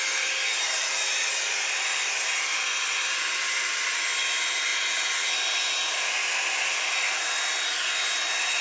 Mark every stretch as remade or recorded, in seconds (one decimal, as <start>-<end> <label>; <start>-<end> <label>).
0.0-8.6 recorded